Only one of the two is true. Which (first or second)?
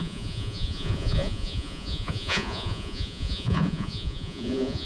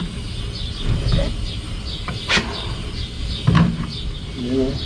second